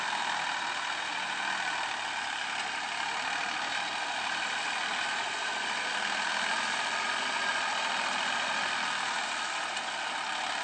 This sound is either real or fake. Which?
real